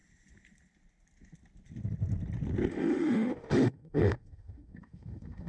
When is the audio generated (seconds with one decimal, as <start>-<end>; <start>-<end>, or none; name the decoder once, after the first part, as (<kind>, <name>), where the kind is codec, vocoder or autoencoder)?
2.7-5.5 (autoencoder, DAC-VAE)